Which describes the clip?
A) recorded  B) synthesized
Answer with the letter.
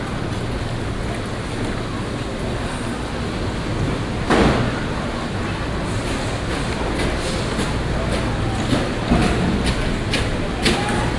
A